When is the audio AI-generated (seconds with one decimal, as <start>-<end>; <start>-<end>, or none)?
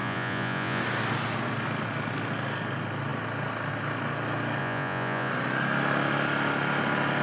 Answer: 0.0-0.8; 4.6-5.3